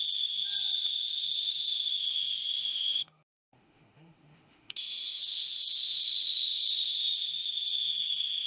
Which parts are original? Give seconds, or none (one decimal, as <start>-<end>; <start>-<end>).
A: 0.0-2.7; 5.2-8.5